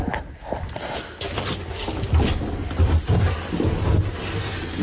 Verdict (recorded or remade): recorded